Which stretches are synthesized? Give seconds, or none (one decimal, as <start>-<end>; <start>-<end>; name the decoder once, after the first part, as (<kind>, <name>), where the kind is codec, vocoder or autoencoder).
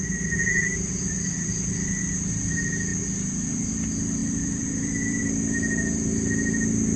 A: 4.2-5.2 (vocoder, BigVGAN v2)